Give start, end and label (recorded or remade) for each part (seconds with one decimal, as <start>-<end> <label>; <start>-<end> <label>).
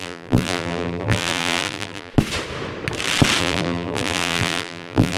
0.0-2.1 remade; 2.1-3.4 recorded; 3.4-5.2 remade